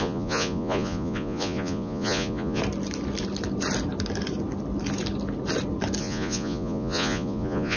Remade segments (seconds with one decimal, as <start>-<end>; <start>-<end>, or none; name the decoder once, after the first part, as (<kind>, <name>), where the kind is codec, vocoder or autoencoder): 0.0-2.6 (vocoder, Vocos); 6.0-7.8